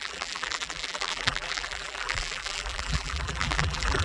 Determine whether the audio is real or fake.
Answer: fake